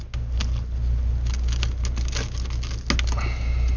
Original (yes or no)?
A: yes